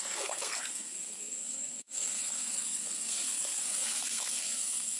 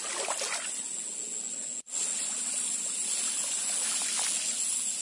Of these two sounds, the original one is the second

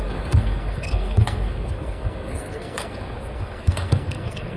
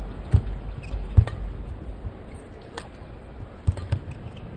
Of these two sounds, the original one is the second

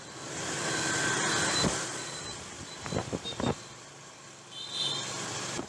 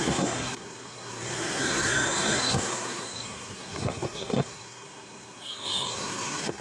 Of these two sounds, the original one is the first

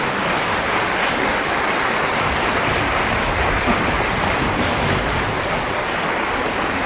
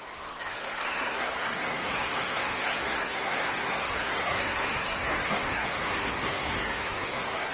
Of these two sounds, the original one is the first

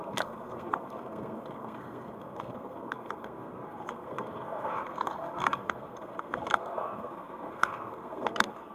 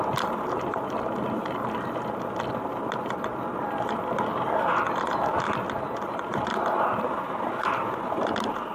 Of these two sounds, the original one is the second